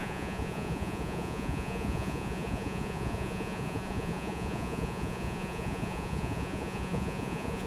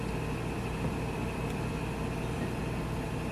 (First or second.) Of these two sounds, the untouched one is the second